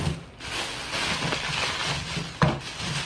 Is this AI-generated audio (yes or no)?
no